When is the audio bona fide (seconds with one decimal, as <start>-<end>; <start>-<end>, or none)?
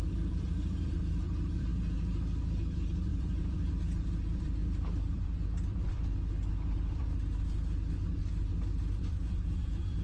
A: 1.7-2.4; 8.5-9.0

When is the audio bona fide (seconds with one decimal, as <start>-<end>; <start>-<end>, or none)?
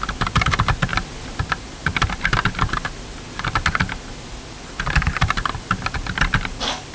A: 0.9-1.4; 1.8-5.9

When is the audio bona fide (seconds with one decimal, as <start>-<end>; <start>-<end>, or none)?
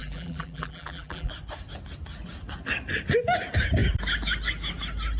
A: 1.3-5.2